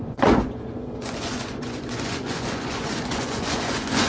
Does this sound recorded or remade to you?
remade